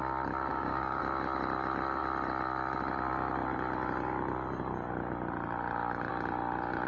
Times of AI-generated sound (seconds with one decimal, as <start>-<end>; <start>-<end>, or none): 0.5-1.0